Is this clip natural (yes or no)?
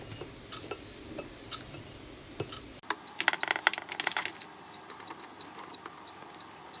yes